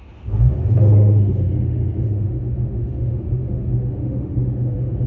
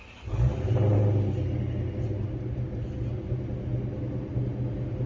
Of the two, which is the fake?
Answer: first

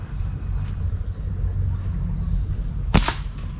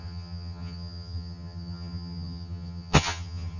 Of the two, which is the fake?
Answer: second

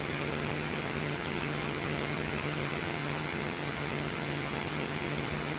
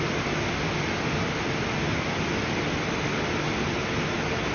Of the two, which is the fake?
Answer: first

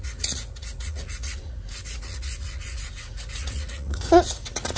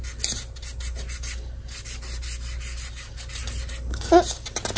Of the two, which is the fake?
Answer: first